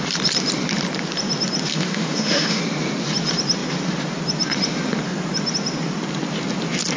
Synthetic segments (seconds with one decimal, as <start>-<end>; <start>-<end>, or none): 1.7-2.6

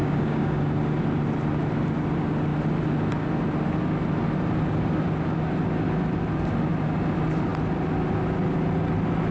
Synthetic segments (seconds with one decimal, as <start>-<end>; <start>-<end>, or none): 0.0-0.6

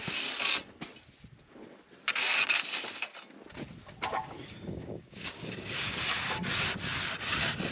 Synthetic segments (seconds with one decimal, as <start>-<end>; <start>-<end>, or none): 4.2-6.0

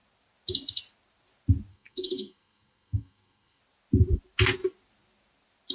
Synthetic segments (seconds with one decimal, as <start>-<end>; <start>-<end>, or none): 1.7-3.6

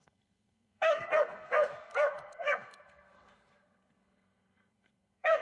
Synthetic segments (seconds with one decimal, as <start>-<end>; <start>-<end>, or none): 0.0-5.4

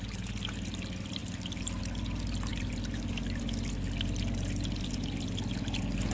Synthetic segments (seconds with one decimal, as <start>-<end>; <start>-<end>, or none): none

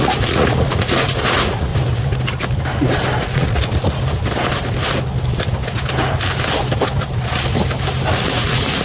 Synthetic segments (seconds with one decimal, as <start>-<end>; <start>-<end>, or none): 0.0-1.7; 3.2-3.6; 8.2-8.8

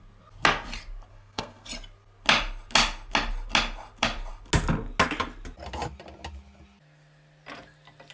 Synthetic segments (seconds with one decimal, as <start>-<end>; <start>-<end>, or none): 1.1-1.7